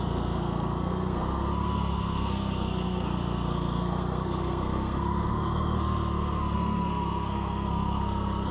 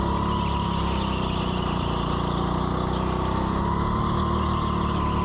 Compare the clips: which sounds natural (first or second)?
second